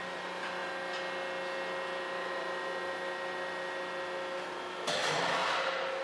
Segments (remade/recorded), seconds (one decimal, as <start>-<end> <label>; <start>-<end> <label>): 0.0-6.0 recorded